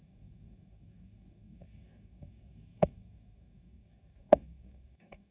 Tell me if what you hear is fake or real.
fake